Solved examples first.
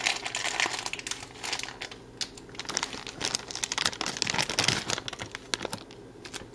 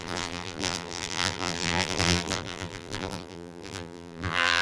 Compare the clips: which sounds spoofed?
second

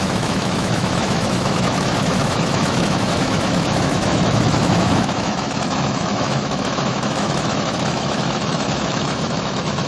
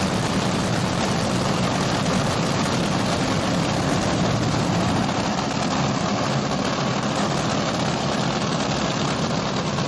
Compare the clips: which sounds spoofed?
first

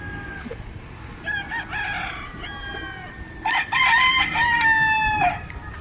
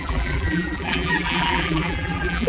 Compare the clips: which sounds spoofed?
second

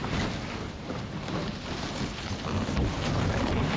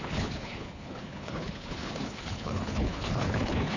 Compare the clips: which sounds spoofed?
second